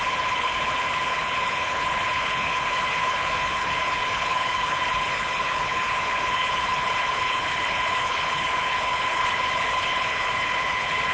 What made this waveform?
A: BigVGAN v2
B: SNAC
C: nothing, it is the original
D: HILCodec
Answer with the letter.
D